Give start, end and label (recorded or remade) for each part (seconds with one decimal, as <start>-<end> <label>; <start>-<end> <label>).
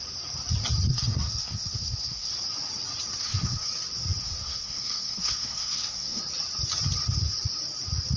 0.0-0.9 recorded; 0.9-2.3 remade; 2.3-3.2 recorded; 3.2-3.7 remade; 3.7-4.2 recorded; 4.2-6.2 remade; 6.2-8.2 recorded